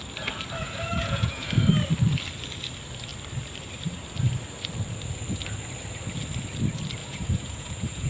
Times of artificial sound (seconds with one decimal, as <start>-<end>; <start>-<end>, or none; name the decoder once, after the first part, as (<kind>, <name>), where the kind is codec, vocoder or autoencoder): 0.6-1.5 (vocoder, Vocos); 7.0-8.1